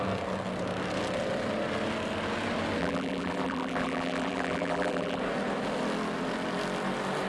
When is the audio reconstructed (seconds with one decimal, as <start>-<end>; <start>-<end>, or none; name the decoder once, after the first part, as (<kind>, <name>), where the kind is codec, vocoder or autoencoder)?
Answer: 2.8-5.2 (vocoder, BigVGAN v2)